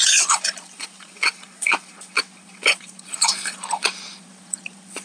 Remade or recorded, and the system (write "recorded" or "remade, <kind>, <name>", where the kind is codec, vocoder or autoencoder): remade, vocoder, Vocos